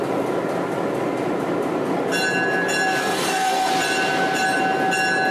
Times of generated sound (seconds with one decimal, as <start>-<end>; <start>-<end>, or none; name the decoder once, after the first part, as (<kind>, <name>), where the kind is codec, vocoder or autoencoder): 3.0-3.7 (codec, SNAC)